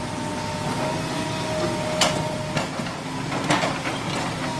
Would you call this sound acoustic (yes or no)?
yes